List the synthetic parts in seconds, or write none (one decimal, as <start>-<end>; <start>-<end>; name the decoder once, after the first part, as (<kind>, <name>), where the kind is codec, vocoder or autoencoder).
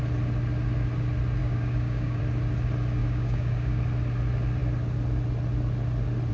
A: 1.4-2.2 (codec, DAC); 3.0-3.8